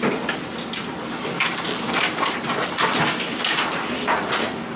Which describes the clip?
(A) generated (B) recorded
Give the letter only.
B